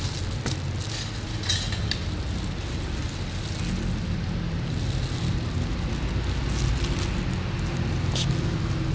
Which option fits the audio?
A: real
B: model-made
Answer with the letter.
A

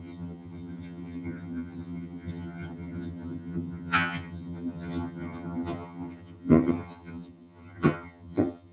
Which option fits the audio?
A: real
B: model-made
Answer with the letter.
B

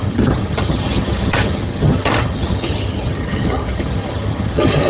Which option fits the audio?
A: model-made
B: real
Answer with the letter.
A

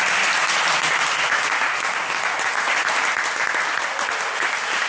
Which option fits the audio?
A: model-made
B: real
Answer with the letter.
B